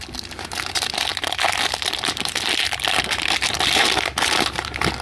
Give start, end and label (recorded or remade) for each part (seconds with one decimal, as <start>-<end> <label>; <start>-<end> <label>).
0.0-1.1 remade; 1.1-1.7 recorded; 1.7-5.0 remade